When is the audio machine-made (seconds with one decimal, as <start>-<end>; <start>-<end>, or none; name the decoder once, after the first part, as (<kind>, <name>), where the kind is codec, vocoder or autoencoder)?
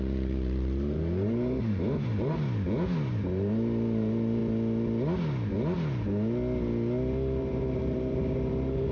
0.0-4.4 (vocoder, BigVGAN v2); 7.4-8.9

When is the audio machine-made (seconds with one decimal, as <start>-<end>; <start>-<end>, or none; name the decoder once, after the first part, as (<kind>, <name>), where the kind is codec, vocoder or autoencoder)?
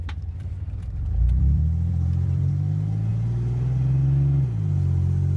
0.0-2.5 (vocoder, BigVGAN v2)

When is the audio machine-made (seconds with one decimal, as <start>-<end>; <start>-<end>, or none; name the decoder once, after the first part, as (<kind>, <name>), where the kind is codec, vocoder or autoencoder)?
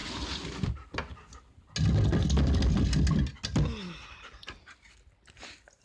none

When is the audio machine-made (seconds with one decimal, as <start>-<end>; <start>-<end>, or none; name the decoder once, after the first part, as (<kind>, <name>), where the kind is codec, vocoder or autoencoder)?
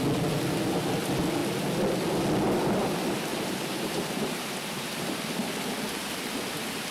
3.3-5.2 (vocoder, BigVGAN v2)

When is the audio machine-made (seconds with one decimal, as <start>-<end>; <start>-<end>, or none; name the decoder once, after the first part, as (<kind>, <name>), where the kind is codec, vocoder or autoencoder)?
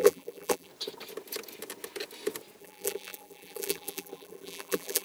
0.0-0.7 (vocoder, BigVGAN v2); 2.6-5.0